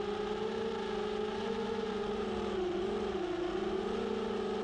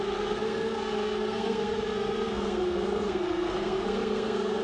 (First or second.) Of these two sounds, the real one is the first